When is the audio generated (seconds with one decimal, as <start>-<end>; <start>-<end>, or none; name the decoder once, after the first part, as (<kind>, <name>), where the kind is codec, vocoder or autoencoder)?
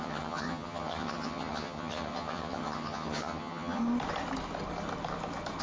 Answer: 0.0-3.8 (vocoder, HiFi-GAN)